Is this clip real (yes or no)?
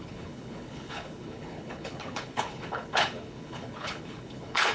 no